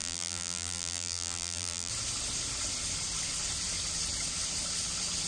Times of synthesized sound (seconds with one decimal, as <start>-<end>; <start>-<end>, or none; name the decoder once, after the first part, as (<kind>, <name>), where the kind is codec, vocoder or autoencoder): 0.0-1.9 (vocoder, BigVGAN v2)